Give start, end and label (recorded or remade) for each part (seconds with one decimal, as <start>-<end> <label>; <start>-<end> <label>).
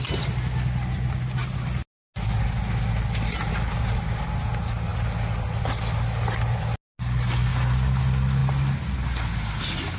0.0-10.0 recorded